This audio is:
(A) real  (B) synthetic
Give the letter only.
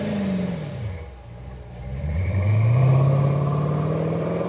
B